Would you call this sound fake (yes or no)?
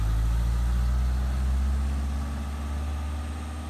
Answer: no